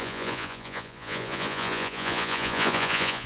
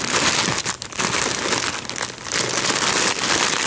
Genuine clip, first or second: second